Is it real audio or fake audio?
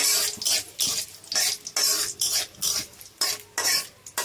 real